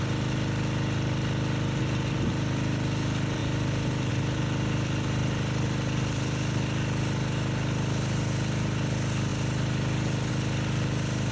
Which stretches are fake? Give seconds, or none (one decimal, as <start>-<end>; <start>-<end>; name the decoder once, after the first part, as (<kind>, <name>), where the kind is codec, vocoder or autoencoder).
none